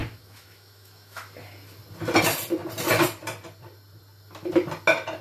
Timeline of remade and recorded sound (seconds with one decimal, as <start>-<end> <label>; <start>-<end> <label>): 0.0-1.3 remade; 1.3-5.2 recorded